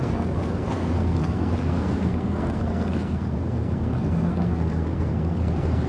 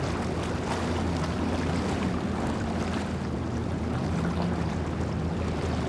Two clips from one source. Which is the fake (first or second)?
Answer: first